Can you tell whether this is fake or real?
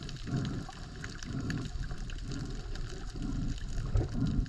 real